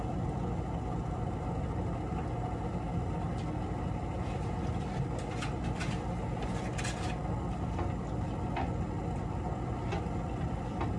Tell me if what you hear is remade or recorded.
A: recorded